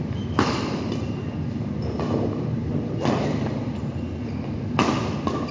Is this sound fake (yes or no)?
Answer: no